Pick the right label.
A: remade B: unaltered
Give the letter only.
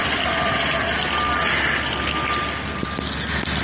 B